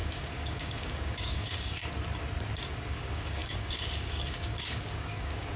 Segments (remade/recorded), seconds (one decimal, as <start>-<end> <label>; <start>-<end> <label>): 0.0-1.8 remade; 1.8-2.7 recorded; 2.7-5.6 remade